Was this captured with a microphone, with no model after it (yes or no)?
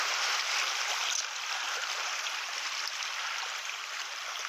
no